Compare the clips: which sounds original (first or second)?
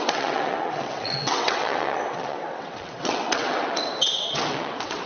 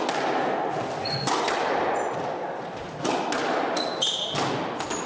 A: second